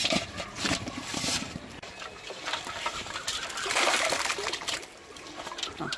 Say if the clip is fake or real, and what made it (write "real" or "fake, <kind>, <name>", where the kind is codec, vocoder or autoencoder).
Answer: fake, vocoder, BigVGAN v2